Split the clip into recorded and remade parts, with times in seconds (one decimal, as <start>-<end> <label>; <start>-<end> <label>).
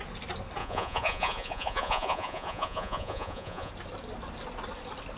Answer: 0.0-0.6 recorded; 0.6-3.7 remade; 3.7-5.2 recorded